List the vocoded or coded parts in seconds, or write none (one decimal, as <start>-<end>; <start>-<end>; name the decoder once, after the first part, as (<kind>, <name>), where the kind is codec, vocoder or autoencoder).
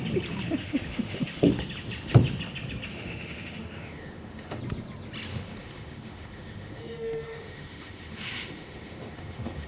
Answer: 0.6-1.5 (autoencoder, DAC-VAE); 2.9-4.6; 5.3-9.7